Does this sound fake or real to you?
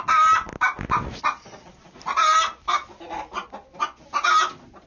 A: real